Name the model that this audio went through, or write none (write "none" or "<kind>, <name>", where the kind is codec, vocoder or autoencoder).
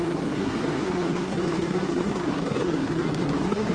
codec, SNAC